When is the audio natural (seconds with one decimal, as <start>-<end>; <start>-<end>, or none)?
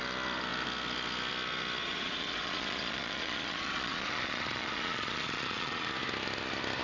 0.0-1.8; 5.9-6.8